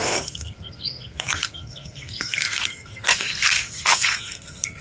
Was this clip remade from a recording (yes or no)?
yes